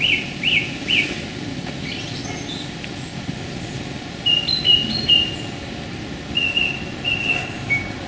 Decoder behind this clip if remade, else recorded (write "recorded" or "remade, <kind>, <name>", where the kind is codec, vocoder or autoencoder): recorded